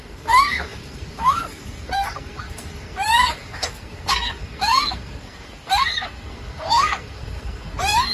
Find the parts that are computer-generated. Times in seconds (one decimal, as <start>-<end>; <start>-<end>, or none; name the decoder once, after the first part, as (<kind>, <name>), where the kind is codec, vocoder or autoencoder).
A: 0.0-8.1 (codec, SNAC)